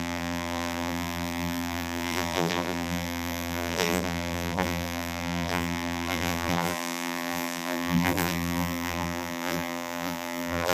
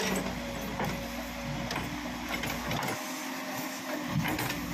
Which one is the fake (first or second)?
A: first